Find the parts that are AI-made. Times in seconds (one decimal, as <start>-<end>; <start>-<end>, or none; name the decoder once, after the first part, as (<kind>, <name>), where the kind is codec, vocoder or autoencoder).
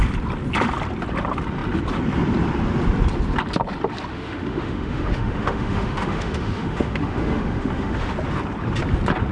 4.1-8.1 (autoencoder, DAC-VAE)